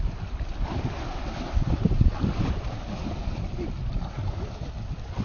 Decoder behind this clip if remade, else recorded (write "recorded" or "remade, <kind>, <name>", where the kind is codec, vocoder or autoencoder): recorded